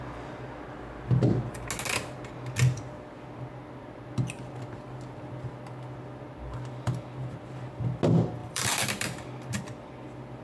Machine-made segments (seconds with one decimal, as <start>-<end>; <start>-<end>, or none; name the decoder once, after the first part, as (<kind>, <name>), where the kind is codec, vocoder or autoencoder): 8.4-9.6 (vocoder, BigVGAN v2)